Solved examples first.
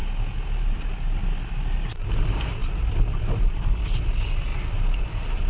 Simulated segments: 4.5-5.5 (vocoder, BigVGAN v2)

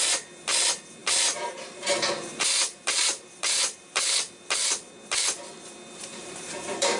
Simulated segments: 1.0-4.2 (vocoder, BigVGAN v2); 6.1-7.0

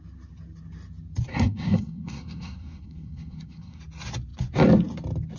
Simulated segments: 1.3-3.8 (codec, SNAC)

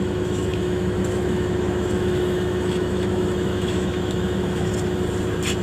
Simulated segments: 0.0-4.7 (autoencoder, DAC-VAE)

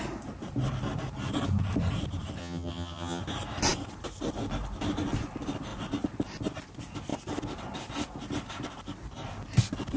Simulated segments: 2.4-3.2 (vocoder, HiFi-GAN)

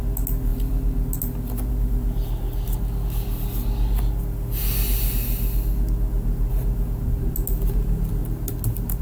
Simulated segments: none

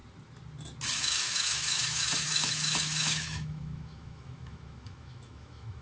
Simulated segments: 1.0-5.8 (autoencoder, DAC-VAE)

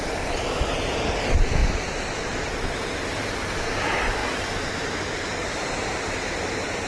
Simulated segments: none